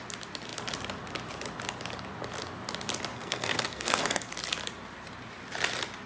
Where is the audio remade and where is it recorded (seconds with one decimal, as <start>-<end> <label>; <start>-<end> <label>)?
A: 0.0-3.1 recorded; 3.1-4.3 remade; 4.3-6.1 recorded